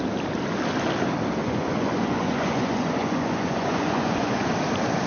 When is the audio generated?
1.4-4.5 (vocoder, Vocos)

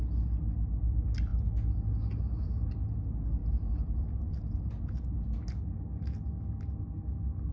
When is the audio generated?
none